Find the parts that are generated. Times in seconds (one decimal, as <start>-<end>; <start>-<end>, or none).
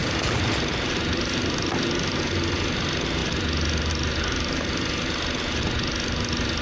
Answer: none